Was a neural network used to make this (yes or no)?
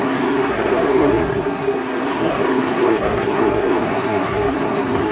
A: yes